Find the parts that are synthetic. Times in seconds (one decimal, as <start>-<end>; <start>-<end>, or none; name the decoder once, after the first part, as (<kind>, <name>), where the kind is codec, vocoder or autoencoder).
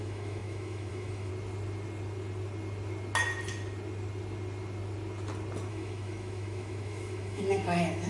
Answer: 0.0-1.3 (autoencoder, DAC-VAE); 5.7-8.1